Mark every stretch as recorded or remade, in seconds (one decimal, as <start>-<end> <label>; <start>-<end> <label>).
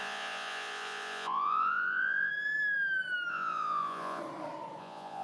0.0-2.3 remade; 2.3-3.3 recorded; 3.3-4.2 remade; 4.2-4.8 recorded; 4.8-5.2 remade